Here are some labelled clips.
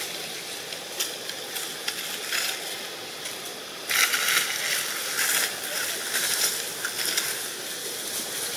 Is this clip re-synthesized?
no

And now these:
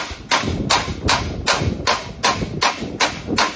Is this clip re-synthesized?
no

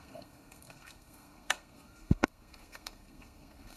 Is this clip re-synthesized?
yes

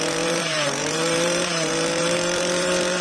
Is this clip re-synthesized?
yes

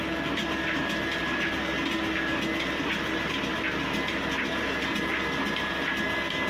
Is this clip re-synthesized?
no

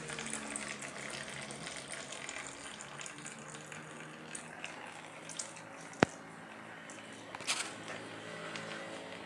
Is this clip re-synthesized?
no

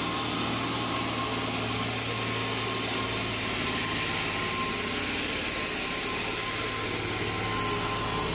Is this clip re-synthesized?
no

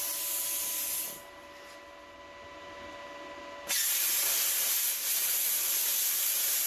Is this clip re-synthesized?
no